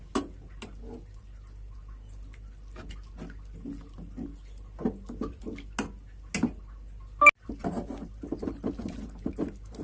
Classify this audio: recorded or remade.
recorded